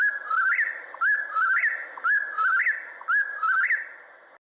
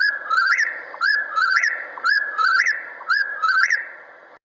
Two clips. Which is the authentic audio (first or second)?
first